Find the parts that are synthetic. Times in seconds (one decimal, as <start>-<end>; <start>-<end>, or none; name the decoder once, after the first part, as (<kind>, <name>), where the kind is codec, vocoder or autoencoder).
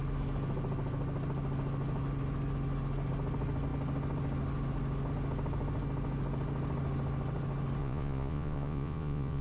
7.8-9.4 (vocoder, Vocos)